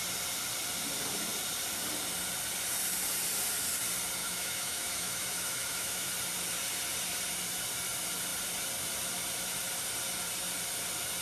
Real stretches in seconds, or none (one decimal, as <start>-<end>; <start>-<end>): 0.0-4.2; 6.1-11.2